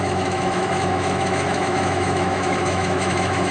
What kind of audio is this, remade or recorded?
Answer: remade